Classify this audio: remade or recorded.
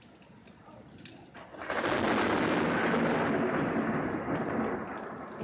recorded